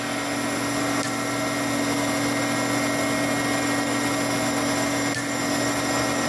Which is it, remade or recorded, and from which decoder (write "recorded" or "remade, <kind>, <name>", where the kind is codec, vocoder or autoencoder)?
recorded